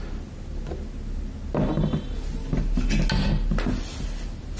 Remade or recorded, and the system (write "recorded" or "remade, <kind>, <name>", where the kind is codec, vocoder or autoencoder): recorded